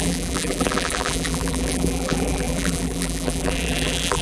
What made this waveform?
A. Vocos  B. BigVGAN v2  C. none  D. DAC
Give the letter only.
B